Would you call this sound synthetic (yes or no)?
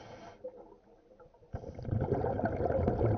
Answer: no